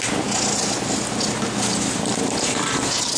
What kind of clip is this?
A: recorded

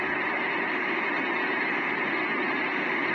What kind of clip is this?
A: recorded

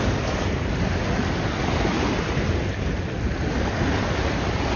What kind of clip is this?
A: recorded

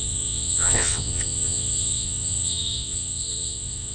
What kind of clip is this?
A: remade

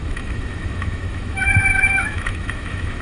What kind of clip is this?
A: remade